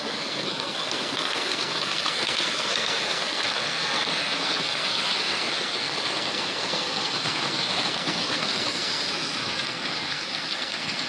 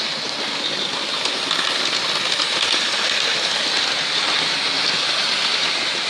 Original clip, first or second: second